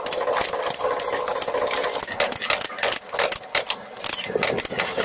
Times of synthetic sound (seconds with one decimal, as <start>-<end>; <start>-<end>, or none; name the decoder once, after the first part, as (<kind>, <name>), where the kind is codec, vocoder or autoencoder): none